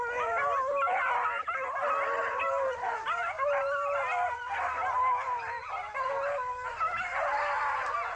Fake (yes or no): no